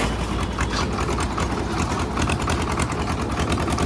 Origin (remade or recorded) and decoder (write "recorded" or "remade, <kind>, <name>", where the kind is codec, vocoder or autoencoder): recorded